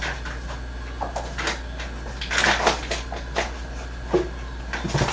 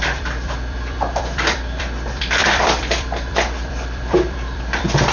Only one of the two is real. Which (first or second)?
first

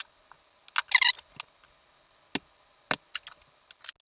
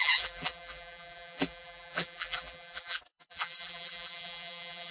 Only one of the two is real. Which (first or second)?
first